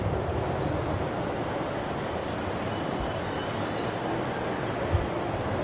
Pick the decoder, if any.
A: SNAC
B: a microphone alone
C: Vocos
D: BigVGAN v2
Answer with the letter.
B